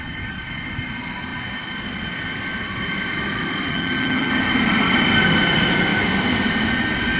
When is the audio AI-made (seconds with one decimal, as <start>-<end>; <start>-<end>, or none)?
3.7-4.3